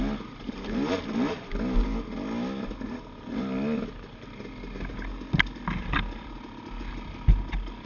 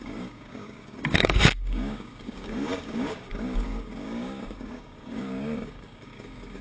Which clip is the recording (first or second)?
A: first